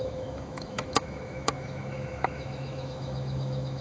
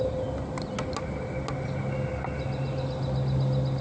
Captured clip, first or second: second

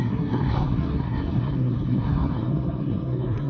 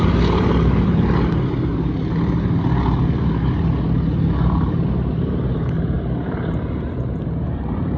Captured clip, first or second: second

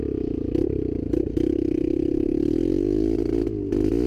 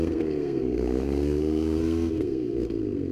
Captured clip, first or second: first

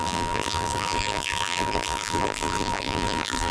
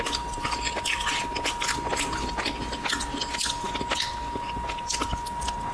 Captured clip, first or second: second